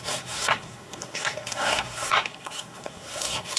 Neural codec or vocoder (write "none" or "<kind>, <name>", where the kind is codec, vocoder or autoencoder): codec, SNAC